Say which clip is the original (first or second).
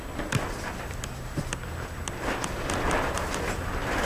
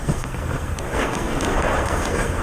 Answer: first